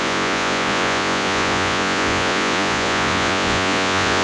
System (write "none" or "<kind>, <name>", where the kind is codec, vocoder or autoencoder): vocoder, Vocos